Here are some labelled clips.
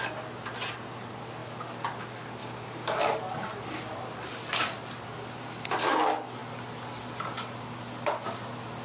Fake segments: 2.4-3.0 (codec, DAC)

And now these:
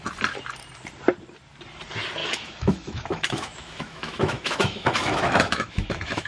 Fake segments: 2.2-6.3 (autoencoder, DAC-VAE)

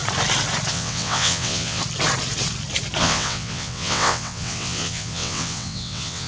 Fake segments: 0.7-1.8 (vocoder, WaveNeXt); 3.0-6.3

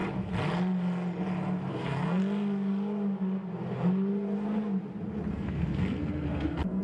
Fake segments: 1.7-2.2 (codec, SNAC); 5.3-6.8

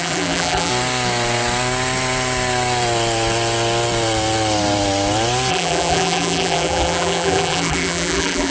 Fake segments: 0.0-0.7 (vocoder, BigVGAN v2); 5.5-8.5

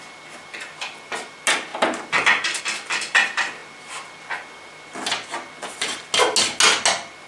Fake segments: none